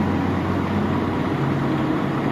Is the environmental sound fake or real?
real